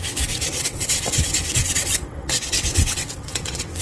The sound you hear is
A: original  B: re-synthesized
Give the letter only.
B